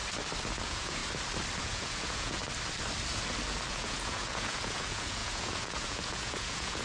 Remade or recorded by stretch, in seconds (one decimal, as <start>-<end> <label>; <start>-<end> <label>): 0.0-0.6 recorded; 0.6-1.0 remade; 1.0-1.6 recorded; 1.6-2.4 remade; 2.4-3.7 recorded; 3.7-6.8 remade